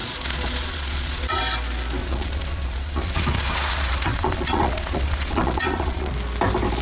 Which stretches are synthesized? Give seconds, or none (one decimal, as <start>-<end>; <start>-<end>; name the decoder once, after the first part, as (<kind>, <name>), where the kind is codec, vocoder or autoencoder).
0.0-1.4 (vocoder, Vocos); 2.0-6.1